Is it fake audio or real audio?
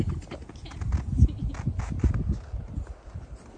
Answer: real